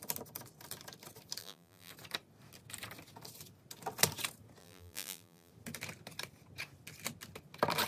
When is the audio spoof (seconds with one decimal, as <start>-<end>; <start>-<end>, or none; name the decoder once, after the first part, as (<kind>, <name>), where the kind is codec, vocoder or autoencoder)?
1.4-1.9 (vocoder, BigVGAN v2); 4.6-5.5